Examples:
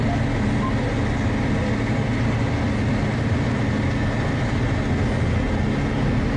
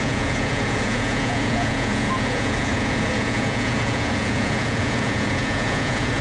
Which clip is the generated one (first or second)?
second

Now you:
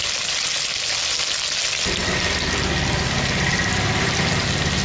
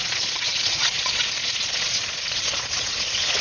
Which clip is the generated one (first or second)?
second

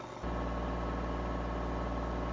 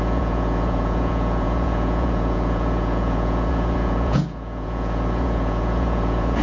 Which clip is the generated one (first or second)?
second